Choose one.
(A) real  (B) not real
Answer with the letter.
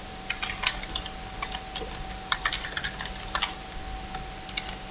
A